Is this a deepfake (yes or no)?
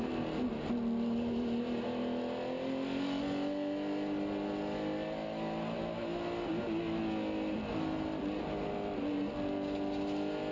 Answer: no